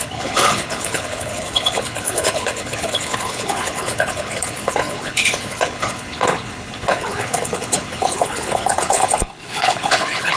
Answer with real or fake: fake